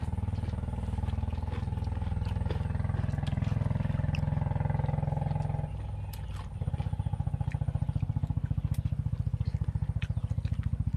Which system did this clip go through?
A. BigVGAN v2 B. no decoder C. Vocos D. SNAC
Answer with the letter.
B